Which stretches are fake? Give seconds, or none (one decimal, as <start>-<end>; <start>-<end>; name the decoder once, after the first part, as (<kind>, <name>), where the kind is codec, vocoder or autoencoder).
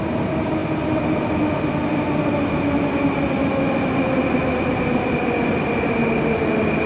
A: none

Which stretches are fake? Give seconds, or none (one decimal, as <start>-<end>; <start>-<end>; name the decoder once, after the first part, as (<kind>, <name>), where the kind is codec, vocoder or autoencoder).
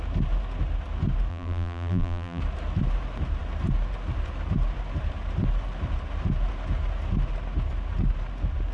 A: 1.3-2.4 (vocoder, BigVGAN v2)